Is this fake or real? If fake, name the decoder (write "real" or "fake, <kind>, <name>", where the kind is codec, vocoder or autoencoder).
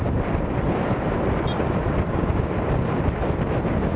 real